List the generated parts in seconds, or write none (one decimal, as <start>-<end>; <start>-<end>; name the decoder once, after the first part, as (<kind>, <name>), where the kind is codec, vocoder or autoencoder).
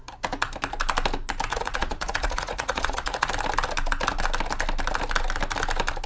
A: 1.5-3.3 (vocoder, Vocos)